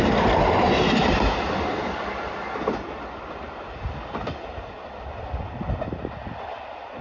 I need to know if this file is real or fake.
real